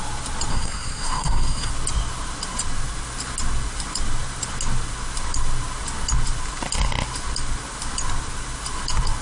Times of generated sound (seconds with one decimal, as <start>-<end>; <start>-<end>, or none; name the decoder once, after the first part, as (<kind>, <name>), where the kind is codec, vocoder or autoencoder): 0.5-1.7 (codec, SNAC)